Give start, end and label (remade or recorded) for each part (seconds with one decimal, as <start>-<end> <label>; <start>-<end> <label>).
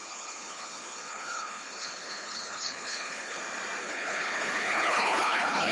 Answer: 0.0-3.4 remade; 3.4-3.8 recorded; 3.8-5.7 remade